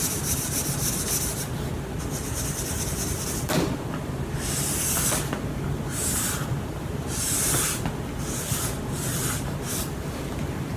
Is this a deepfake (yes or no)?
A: no